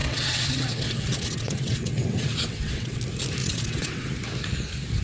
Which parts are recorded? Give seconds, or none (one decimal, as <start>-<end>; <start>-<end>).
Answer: 3.0-3.4; 4.1-5.0